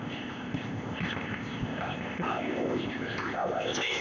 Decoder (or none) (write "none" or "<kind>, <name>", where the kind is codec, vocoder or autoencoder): codec, ZipCodec